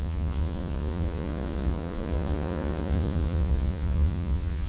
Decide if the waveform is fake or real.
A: fake